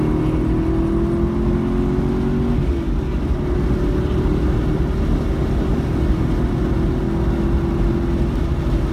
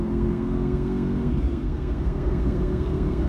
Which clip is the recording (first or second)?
first